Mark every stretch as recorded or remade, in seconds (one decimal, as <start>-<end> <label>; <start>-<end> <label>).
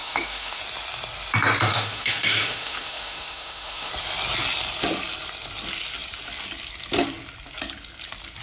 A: 0.0-0.6 remade; 0.6-1.7 recorded; 1.7-3.9 remade; 3.9-8.4 recorded